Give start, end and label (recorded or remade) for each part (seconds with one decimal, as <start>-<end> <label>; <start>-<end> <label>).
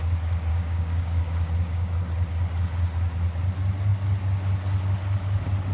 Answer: 0.0-0.5 recorded; 0.5-1.9 remade; 1.9-5.7 recorded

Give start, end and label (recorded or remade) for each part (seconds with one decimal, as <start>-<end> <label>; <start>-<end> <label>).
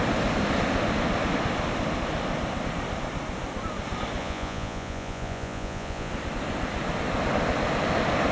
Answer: 0.0-4.2 recorded; 4.2-6.1 remade; 6.1-8.3 recorded